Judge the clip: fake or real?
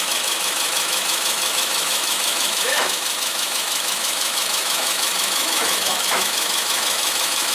fake